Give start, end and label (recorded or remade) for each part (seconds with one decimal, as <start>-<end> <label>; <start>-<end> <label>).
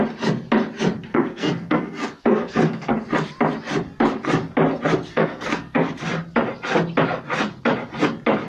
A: 0.0-1.1 recorded; 1.1-2.9 remade; 2.9-5.1 recorded; 5.1-5.9 remade; 5.9-8.5 recorded